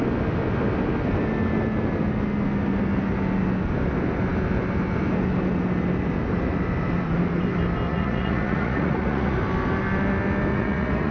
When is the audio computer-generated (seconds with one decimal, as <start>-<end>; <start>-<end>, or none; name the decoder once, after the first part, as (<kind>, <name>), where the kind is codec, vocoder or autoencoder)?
7.9-9.4 (vocoder, Vocos); 10.5-11.1

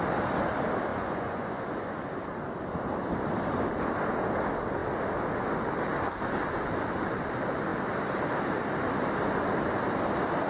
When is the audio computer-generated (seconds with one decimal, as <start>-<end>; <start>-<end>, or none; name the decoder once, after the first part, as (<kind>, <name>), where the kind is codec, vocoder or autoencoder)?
0.9-2.0 (vocoder, Vocos)

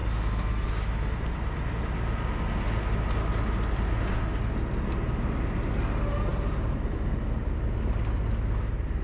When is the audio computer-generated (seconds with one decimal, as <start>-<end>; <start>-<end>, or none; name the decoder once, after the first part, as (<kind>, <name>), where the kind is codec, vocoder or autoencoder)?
none